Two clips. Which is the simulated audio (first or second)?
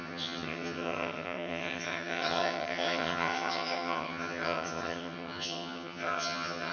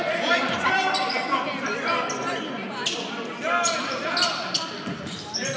first